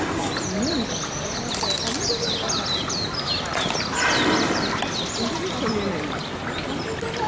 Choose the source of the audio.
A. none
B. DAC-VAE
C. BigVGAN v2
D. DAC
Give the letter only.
A